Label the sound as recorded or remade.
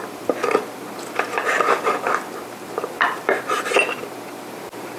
remade